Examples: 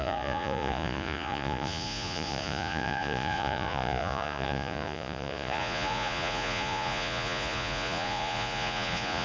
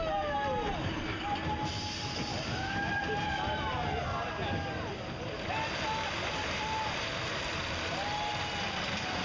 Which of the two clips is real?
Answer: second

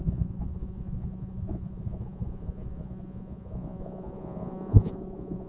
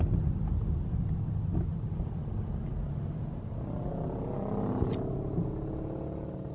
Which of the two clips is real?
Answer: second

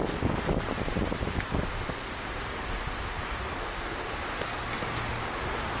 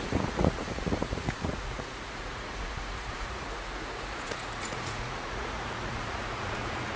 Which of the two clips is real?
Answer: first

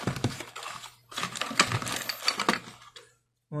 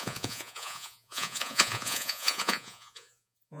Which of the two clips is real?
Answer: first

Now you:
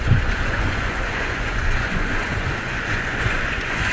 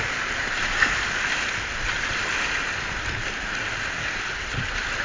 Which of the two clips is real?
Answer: second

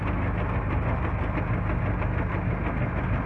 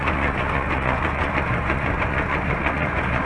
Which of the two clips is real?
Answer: first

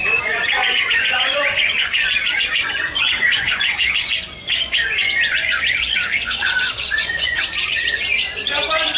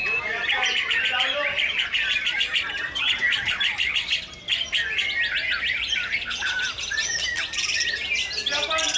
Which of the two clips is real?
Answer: second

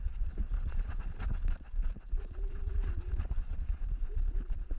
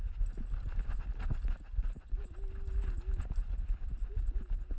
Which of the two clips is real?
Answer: second